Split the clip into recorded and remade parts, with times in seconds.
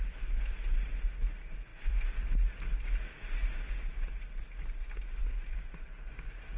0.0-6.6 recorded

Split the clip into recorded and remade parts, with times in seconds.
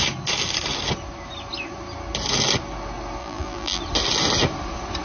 0.0-3.2 recorded; 3.2-3.8 remade; 3.8-5.0 recorded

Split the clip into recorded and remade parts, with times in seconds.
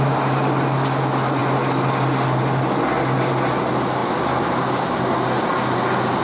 0.0-6.2 recorded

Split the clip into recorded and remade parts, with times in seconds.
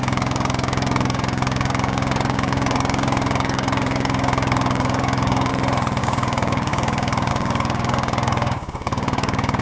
0.0-5.5 remade; 5.5-6.0 recorded; 6.0-9.6 remade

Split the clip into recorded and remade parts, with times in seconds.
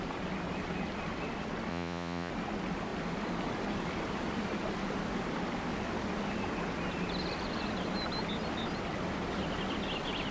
0.0-1.7 recorded; 1.7-2.3 remade; 2.3-10.3 recorded